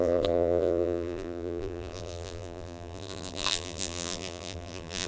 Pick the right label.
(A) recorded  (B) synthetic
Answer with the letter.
B